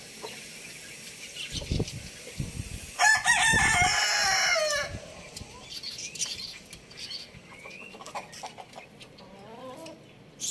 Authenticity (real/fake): real